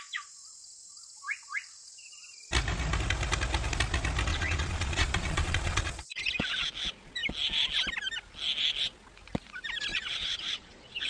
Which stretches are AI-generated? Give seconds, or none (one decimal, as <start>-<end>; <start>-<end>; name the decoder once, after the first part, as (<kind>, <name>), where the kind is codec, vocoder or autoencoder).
4.3-6.2 (vocoder, Vocos); 9.9-11.1

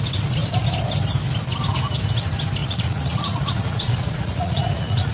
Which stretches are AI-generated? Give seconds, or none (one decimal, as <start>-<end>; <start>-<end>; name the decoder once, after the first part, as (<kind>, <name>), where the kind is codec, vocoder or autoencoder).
2.6-5.1 (vocoder, Vocos)

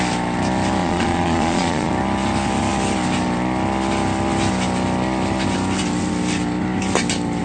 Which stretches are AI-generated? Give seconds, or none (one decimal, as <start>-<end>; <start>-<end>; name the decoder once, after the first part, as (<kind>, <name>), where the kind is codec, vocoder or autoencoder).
0.8-1.9 (vocoder, Vocos)

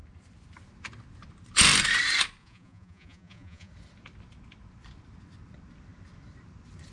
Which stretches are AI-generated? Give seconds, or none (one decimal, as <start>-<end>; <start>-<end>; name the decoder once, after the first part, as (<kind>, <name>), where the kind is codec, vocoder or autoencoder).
2.4-3.7 (vocoder, Vocos)

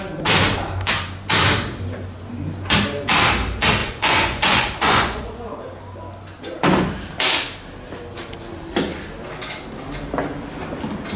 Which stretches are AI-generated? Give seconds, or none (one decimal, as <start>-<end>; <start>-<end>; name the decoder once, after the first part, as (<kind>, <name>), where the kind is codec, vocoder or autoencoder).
3.8-5.5 (vocoder, Vocos)

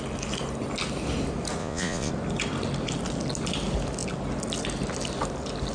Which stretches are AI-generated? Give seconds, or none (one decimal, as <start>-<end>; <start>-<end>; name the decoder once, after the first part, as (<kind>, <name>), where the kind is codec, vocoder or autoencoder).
1.6-2.1 (vocoder, Vocos)

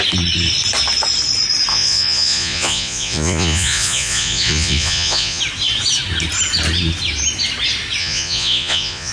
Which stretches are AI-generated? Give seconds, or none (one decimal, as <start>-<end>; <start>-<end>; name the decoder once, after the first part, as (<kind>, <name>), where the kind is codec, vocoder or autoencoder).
1.7-5.4 (vocoder, Vocos); 8.0-9.1